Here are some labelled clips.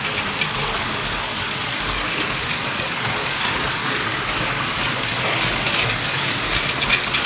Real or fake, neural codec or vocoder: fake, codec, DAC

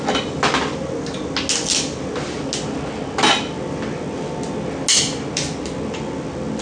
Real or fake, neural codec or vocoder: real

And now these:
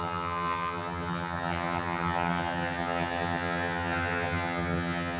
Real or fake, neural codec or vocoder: fake, vocoder, HiFi-GAN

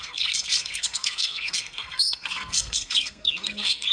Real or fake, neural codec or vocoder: fake, codec, SNAC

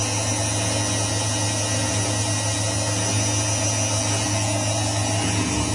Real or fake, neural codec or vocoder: real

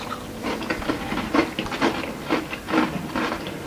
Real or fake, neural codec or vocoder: real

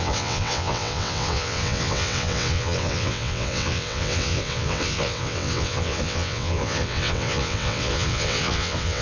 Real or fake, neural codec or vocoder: fake, vocoder, WaveNeXt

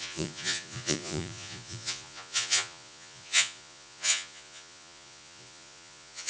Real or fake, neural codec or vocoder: fake, vocoder, Vocos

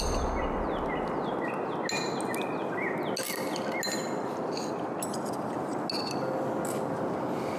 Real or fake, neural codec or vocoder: real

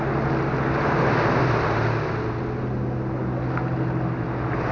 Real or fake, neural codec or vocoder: real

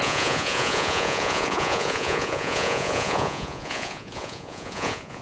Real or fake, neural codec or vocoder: fake, vocoder, Vocos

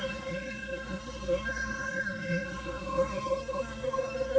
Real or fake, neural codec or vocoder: fake, codec, SNAC